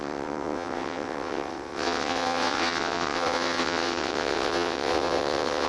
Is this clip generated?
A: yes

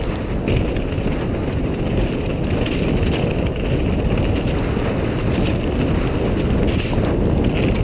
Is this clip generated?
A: no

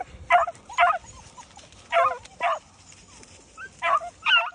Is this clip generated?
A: no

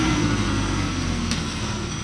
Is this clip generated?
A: yes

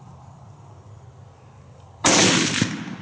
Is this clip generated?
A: yes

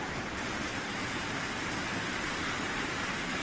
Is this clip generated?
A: no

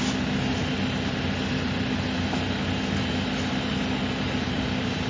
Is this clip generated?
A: no